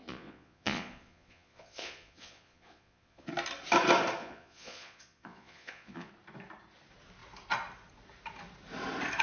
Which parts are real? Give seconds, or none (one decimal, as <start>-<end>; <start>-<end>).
3.3-4.2; 6.1-9.2